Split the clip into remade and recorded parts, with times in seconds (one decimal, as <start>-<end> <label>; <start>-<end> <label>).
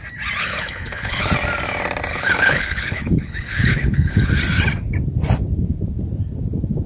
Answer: 0.0-0.4 recorded; 0.4-1.3 remade; 1.3-2.1 recorded; 2.1-4.3 remade; 4.3-6.9 recorded